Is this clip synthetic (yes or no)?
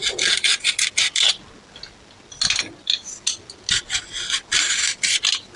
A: no